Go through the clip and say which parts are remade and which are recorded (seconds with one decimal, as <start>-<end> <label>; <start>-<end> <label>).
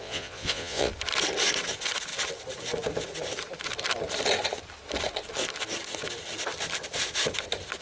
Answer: 0.0-0.9 remade; 0.9-7.8 recorded